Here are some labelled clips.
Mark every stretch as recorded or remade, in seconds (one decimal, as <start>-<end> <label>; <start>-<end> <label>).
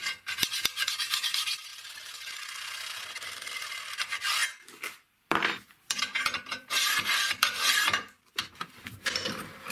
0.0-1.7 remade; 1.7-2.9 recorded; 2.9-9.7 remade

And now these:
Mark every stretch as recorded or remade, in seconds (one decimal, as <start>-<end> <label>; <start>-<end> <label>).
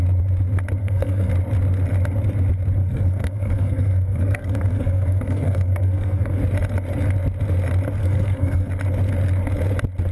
0.0-0.8 recorded; 0.8-1.3 remade; 1.3-2.8 recorded; 2.8-6.4 remade; 6.4-8.0 recorded; 8.0-8.7 remade; 8.7-10.1 recorded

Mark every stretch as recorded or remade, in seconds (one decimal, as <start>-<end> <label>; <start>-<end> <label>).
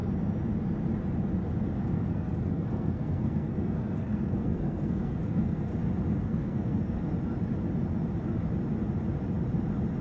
0.0-1.6 recorded; 1.6-5.7 remade; 5.7-6.2 recorded; 6.2-7.1 remade; 7.1-10.0 recorded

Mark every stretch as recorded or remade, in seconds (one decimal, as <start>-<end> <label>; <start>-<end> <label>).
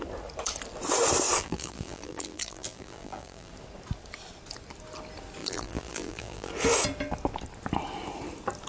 0.0-1.4 recorded; 1.4-3.5 remade; 3.5-5.4 recorded; 5.4-6.5 remade; 6.5-8.7 recorded